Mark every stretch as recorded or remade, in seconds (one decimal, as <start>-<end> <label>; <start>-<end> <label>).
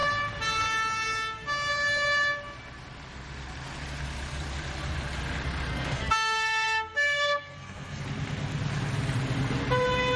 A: 0.0-5.7 recorded; 5.7-8.0 remade; 8.0-10.2 recorded